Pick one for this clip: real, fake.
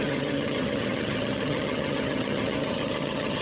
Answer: fake